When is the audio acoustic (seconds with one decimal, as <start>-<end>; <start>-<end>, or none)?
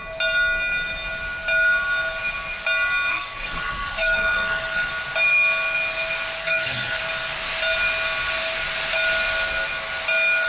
0.0-3.1; 4.9-6.4; 7.0-10.5